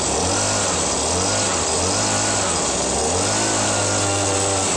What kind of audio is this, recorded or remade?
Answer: recorded